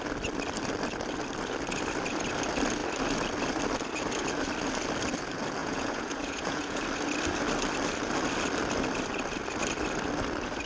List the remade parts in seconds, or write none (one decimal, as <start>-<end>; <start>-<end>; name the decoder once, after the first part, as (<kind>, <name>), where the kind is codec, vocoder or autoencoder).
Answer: 5.6-6.8 (vocoder, Vocos)